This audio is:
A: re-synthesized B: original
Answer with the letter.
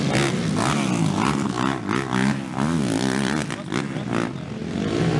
B